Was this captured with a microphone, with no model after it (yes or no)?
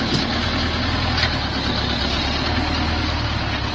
yes